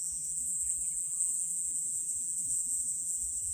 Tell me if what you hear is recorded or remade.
remade